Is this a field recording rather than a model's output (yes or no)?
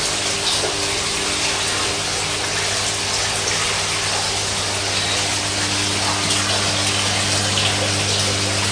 yes